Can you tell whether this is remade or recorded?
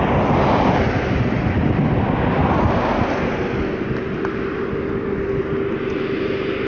recorded